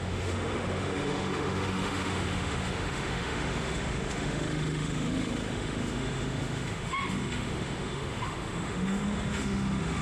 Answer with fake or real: fake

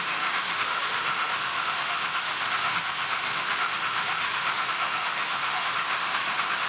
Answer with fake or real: fake